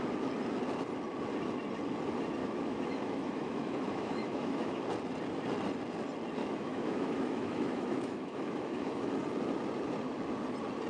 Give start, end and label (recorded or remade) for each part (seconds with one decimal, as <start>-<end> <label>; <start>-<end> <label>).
0.0-2.4 recorded; 2.4-4.8 remade; 4.8-6.4 recorded; 6.4-9.1 remade; 9.1-10.9 recorded